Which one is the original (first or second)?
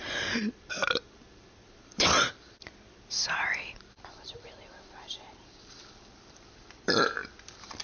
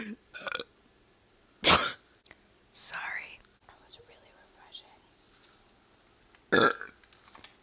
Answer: second